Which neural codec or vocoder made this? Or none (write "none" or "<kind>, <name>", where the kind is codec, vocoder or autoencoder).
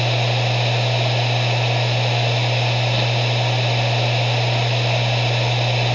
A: none